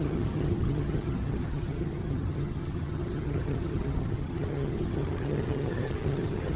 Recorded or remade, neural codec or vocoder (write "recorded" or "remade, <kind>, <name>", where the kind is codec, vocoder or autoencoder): remade, vocoder, HiFi-GAN